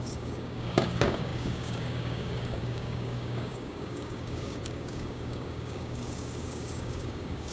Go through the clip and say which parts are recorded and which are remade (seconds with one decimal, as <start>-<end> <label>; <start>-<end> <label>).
0.0-7.5 remade